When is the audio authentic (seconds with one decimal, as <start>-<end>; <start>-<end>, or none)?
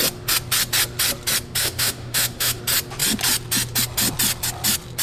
0.0-1.6; 2.6-5.0